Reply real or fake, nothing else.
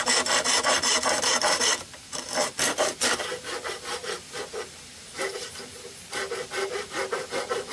fake